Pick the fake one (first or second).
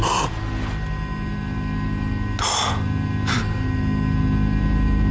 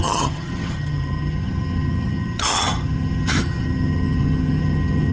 second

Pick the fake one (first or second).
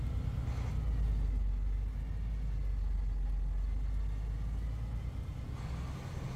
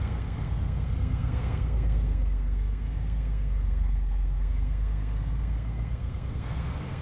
second